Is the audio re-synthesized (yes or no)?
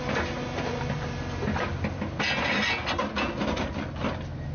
no